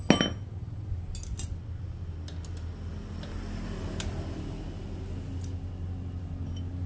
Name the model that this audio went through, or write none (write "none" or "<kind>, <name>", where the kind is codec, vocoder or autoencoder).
none